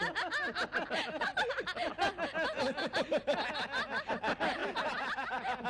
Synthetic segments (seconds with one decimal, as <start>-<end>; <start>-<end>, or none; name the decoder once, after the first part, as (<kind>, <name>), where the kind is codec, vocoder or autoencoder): none